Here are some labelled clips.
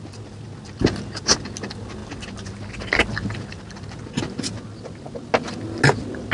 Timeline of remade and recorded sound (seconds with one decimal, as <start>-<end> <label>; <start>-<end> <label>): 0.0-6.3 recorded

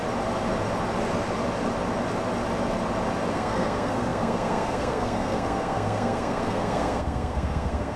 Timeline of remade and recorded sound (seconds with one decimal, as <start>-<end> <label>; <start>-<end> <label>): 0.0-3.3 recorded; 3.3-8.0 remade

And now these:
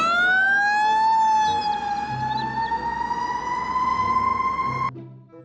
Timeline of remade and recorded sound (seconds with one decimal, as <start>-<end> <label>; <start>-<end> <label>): 0.0-5.4 recorded